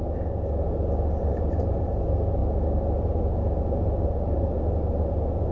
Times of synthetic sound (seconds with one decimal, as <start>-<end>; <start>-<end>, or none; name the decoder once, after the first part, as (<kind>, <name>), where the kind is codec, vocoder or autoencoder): 1.3-2.0 (vocoder, BigVGAN v2)